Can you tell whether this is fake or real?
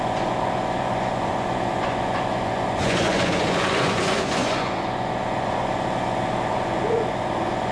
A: fake